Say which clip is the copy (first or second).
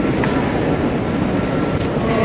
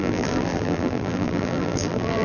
second